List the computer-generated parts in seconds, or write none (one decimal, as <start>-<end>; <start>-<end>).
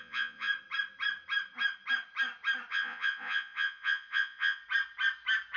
0.0-0.5; 2.7-4.6